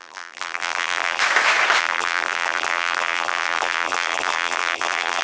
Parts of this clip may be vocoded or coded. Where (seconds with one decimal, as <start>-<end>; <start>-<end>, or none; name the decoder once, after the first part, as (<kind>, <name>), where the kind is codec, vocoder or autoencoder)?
0.0-1.2 (vocoder, BigVGAN v2); 1.8-5.2